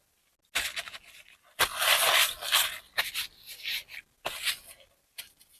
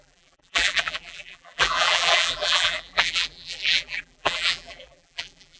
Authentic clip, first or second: first